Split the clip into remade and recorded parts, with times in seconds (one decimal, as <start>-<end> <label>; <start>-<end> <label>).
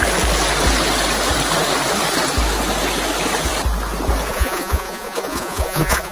0.0-4.3 recorded; 4.3-6.1 remade